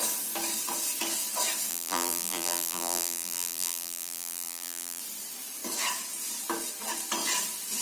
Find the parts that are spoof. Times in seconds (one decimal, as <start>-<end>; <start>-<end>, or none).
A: 1.7-5.0